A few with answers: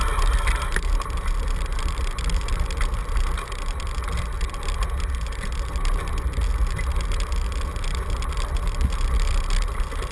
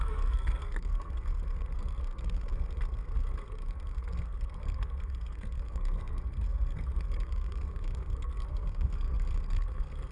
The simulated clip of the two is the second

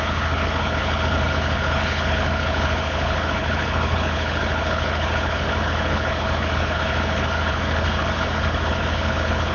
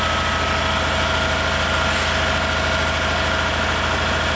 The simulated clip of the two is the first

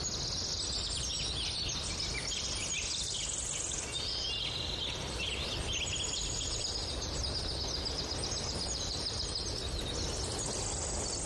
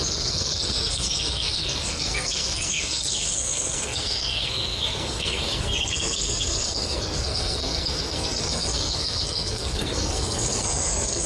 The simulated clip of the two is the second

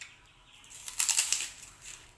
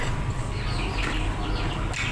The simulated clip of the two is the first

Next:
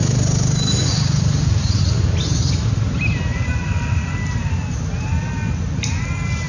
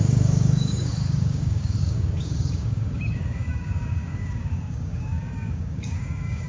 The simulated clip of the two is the second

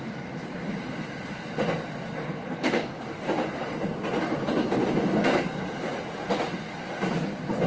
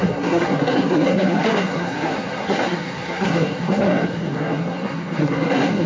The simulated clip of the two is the second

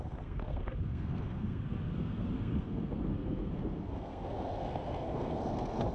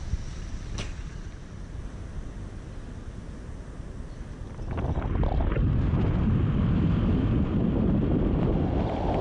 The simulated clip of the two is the first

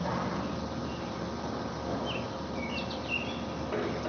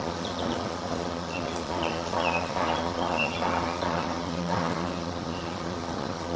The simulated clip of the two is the second